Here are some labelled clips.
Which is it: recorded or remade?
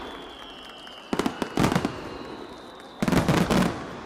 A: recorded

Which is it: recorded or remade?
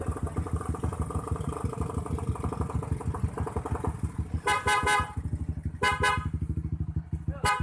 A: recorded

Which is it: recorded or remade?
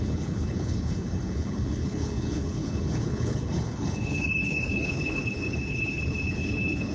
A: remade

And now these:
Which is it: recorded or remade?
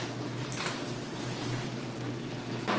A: recorded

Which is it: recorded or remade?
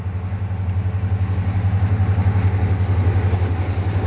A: recorded